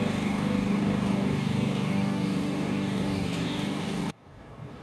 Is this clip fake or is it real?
fake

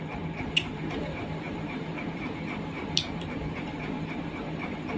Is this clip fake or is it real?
fake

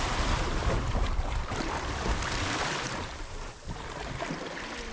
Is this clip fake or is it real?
real